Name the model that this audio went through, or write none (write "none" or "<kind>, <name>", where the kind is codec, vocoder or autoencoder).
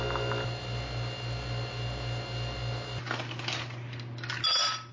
none